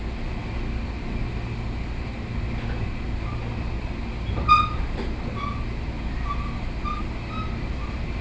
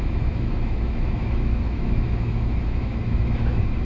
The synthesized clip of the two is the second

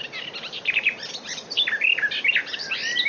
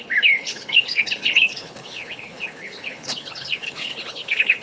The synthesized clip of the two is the second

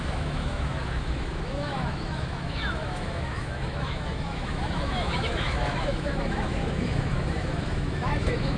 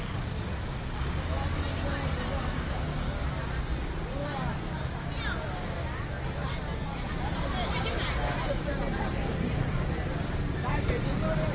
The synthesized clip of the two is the first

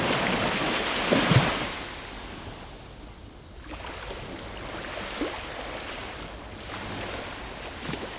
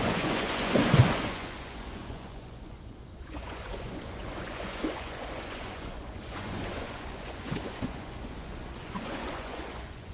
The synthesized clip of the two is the second